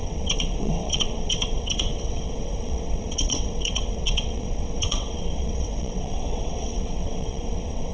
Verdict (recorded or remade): remade